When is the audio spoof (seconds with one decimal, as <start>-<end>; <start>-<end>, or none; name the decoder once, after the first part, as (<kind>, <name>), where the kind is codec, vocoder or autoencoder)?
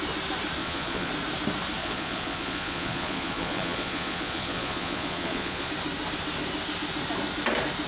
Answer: 0.6-1.1 (vocoder, Vocos); 1.8-5.7